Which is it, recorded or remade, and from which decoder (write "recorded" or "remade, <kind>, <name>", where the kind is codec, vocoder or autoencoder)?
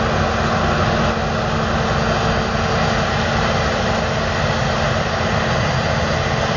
recorded